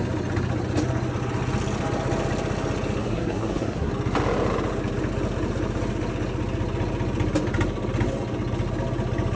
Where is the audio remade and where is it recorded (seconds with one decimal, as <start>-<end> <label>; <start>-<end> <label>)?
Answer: 0.0-3.0 recorded; 3.0-3.9 remade; 3.9-9.4 recorded